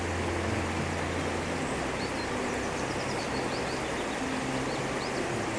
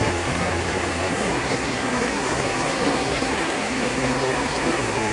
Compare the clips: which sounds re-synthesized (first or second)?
second